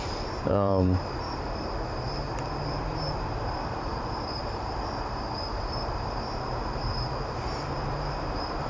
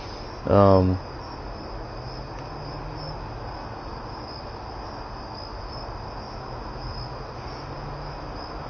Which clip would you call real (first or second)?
second